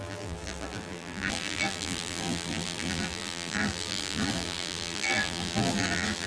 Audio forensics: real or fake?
fake